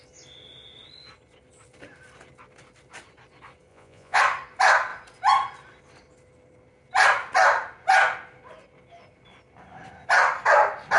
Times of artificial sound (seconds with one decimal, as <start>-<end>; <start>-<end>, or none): 3.7-4.2